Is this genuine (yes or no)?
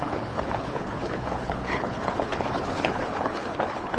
no